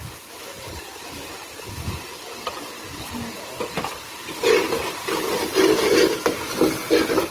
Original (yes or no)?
yes